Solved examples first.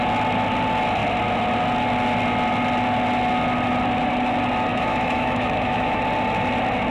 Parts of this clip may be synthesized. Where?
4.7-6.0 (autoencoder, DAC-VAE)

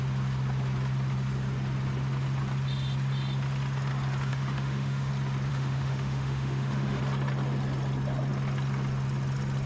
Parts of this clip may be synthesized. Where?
4.3-5.1 (autoencoder, DAC-VAE); 5.5-7.0

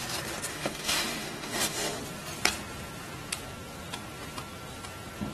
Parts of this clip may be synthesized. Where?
0.5-2.0 (autoencoder, DAC-VAE)

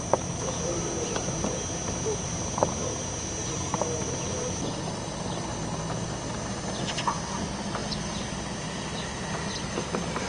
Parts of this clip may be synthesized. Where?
none

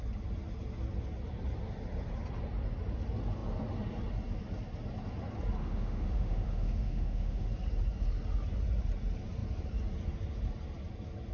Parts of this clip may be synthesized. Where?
5.6-7.5 (autoencoder, DAC-VAE)

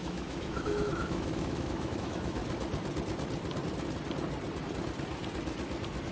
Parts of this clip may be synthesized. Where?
0.0-2.4 (autoencoder, DAC-VAE)